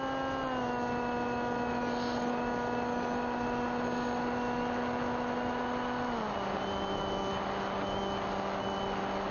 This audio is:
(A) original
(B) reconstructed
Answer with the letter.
A